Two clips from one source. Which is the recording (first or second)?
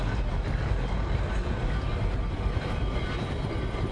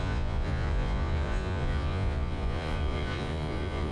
first